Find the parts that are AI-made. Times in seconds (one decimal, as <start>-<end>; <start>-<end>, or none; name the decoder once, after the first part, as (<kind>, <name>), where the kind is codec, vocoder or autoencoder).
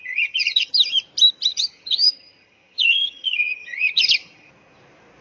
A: 0.0-0.7 (vocoder, HiFi-GAN); 1.5-4.5